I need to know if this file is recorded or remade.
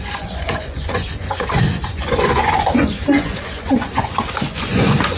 remade